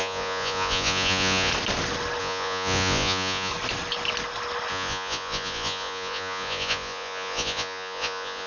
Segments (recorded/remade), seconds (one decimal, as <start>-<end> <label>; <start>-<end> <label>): 0.0-1.5 remade; 1.5-2.2 recorded; 2.2-3.5 remade; 3.5-4.7 recorded; 4.7-8.5 remade